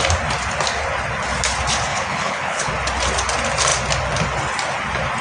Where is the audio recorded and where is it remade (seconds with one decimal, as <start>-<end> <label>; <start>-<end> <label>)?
0.0-1.9 recorded; 1.9-2.7 remade; 2.7-5.2 recorded